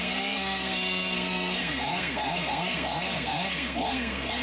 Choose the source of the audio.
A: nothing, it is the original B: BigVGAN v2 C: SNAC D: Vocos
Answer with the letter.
C